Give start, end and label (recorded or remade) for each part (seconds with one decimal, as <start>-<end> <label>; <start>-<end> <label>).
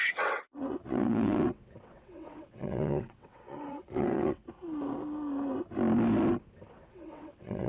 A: 0.0-4.4 remade; 4.4-6.9 recorded; 6.9-7.7 remade